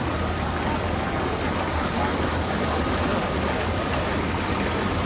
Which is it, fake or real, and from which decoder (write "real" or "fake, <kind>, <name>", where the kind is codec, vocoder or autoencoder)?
real